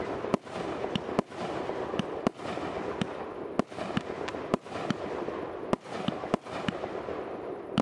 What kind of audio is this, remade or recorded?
recorded